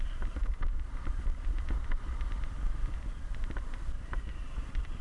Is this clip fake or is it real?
real